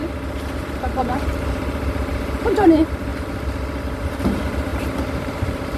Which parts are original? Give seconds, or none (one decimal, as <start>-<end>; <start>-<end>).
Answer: 3.1-3.8